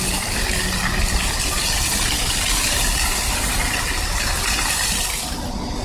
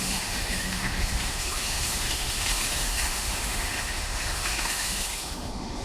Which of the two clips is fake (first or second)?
second